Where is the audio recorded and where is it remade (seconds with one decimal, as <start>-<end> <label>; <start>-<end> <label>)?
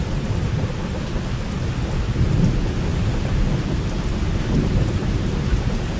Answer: 0.0-2.9 recorded; 2.9-3.7 remade; 3.7-5.0 recorded; 5.0-6.0 remade